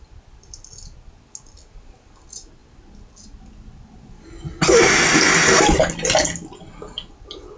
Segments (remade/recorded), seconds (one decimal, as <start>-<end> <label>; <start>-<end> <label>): 0.0-7.6 recorded